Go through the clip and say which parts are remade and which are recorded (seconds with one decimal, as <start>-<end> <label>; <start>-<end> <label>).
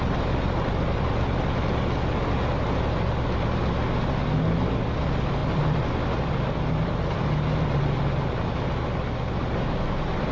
0.0-5.4 recorded; 5.4-7.2 remade; 7.2-10.3 recorded